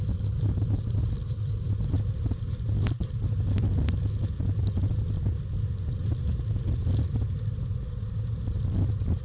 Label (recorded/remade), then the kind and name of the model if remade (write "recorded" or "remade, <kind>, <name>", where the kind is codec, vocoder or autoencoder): recorded